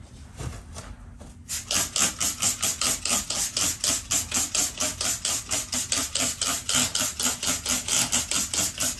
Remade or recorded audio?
recorded